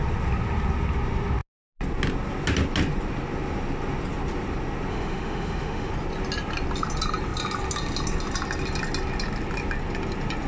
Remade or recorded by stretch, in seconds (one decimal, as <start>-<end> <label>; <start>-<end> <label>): 0.0-4.9 recorded; 4.9-5.9 remade; 5.9-10.5 recorded